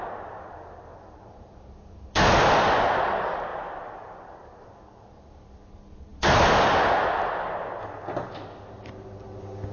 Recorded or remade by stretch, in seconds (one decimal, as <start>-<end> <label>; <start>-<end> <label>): 0.0-3.5 recorded; 3.5-5.6 remade; 5.6-9.7 recorded

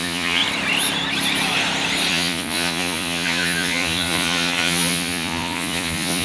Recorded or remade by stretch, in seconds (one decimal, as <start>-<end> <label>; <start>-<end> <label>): 0.0-0.4 remade; 0.4-2.1 recorded; 2.1-6.2 remade

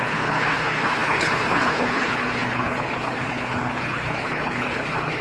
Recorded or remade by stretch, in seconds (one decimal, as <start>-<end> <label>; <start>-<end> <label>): 0.0-5.2 remade

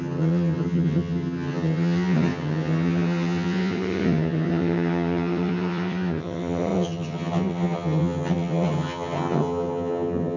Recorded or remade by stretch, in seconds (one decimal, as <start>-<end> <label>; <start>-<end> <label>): 0.0-10.4 remade

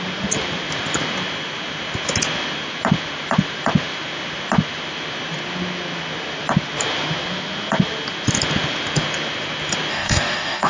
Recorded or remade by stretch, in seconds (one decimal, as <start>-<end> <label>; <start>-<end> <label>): 0.0-9.9 recorded; 9.9-10.7 remade

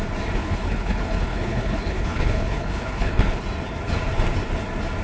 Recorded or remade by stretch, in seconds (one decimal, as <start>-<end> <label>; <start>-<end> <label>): 0.0-0.4 recorded; 0.4-3.4 remade; 3.4-5.0 recorded